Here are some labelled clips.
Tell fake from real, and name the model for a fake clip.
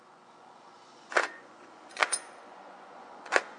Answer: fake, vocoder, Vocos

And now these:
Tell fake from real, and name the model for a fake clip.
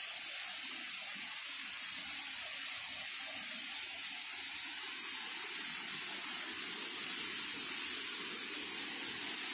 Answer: real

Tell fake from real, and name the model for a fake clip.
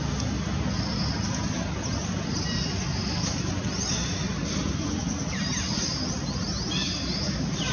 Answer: real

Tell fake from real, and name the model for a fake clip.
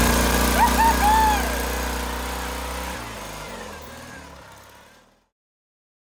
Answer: real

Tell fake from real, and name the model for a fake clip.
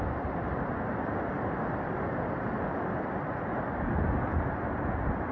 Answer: real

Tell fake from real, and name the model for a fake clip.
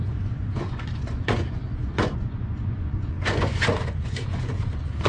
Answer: fake, vocoder, Vocos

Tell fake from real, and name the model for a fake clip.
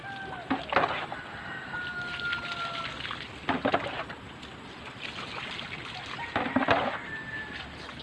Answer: real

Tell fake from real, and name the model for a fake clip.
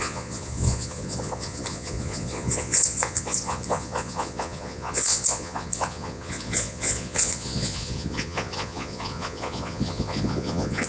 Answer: fake, vocoder, Vocos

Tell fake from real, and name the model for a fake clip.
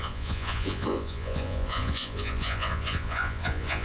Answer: fake, vocoder, Vocos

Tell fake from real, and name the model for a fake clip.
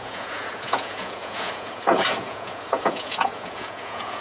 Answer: fake, vocoder, Vocos